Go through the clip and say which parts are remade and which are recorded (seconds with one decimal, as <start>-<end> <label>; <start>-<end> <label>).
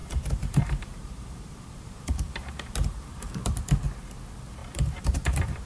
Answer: 0.0-3.4 remade; 3.4-4.6 recorded; 4.6-5.7 remade